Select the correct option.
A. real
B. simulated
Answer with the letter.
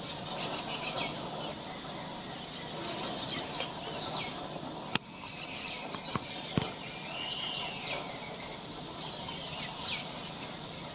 A